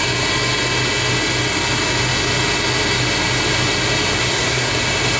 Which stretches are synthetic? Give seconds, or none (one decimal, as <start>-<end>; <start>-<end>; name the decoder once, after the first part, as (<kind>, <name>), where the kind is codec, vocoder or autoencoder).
4.2-4.7 (codec, SNAC)

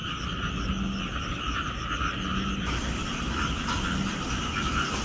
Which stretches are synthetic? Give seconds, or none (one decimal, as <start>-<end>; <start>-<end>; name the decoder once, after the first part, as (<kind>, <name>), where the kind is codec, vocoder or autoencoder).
none

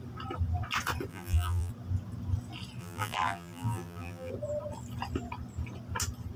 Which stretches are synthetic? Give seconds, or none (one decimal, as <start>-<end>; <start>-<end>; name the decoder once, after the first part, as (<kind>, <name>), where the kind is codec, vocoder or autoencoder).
1.1-1.7 (vocoder, BigVGAN v2); 2.8-4.3

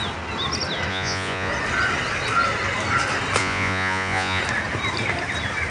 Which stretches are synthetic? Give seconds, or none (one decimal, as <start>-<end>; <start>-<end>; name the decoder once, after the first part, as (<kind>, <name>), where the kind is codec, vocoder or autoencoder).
0.9-1.5 (vocoder, Vocos); 3.4-4.4

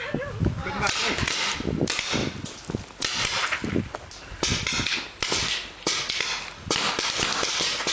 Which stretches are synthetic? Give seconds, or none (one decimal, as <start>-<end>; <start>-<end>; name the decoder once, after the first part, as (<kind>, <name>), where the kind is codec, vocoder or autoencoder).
none

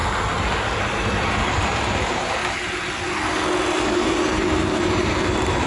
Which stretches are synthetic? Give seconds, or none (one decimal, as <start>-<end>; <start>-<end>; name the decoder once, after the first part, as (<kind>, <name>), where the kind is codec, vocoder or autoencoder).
0.8-2.4 (vocoder, BigVGAN v2); 3.8-5.7